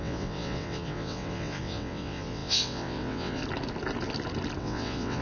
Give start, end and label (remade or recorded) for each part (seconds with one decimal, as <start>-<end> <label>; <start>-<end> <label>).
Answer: 0.0-3.4 remade; 3.4-4.6 recorded; 4.6-5.2 remade